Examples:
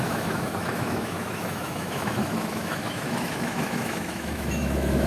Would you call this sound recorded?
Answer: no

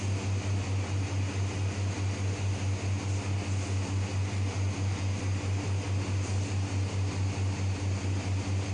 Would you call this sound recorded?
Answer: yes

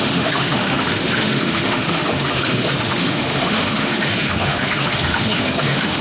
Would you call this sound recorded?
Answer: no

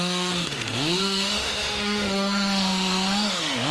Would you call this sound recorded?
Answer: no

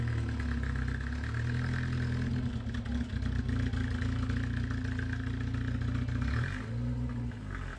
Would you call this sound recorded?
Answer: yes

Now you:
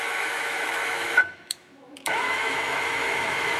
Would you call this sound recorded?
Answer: no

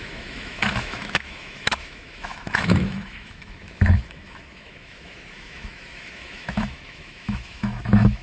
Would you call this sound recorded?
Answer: no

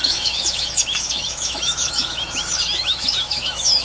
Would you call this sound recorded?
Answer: no